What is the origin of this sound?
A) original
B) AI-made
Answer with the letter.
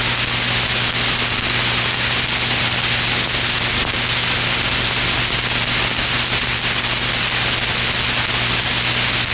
A